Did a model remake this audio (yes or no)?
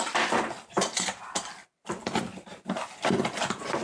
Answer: no